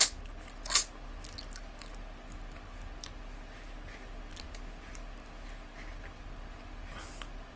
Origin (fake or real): real